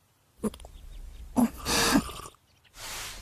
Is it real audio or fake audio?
real